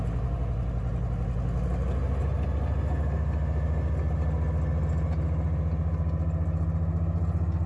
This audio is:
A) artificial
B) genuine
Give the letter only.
B